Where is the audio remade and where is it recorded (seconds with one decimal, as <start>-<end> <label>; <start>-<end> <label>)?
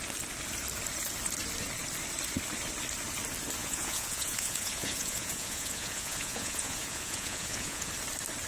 0.0-3.6 recorded; 3.6-7.9 remade; 7.9-8.5 recorded